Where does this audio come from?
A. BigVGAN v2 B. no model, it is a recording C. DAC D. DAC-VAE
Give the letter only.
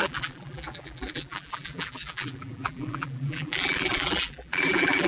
A